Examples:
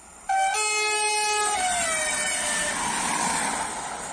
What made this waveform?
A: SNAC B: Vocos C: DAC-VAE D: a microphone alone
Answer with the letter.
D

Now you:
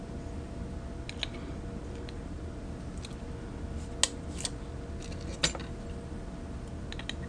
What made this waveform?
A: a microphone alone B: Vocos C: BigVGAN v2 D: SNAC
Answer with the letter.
A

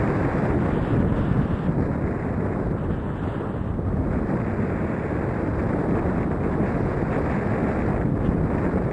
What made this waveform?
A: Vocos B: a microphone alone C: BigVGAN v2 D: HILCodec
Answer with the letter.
B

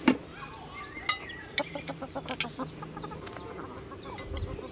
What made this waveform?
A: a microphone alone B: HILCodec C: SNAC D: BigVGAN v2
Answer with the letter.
A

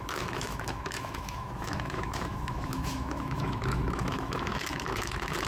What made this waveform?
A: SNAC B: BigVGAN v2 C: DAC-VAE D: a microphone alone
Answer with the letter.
C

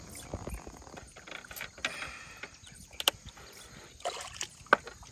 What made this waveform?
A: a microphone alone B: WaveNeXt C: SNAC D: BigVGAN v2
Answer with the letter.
A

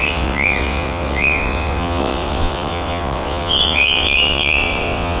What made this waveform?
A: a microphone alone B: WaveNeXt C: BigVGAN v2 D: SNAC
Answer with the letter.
B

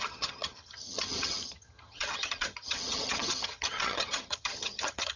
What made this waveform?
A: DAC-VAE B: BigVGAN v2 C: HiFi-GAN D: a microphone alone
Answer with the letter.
C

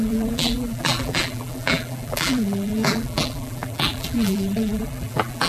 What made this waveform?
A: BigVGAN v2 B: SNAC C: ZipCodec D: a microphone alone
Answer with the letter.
A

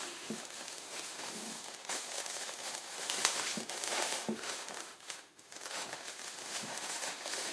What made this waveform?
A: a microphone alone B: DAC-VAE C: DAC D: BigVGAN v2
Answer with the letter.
B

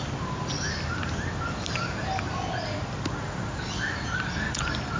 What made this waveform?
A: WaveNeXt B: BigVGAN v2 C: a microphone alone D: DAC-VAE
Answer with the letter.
C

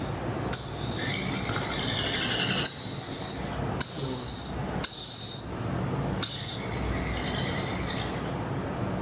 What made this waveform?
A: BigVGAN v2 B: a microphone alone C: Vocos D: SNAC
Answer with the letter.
B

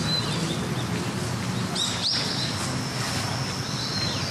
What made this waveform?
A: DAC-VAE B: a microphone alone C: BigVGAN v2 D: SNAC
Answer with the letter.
B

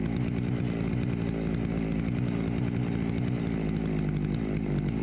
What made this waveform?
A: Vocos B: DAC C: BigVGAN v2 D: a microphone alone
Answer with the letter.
D